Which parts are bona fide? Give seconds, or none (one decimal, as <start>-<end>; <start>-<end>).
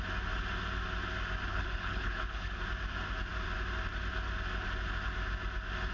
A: 0.0-1.5; 2.6-5.9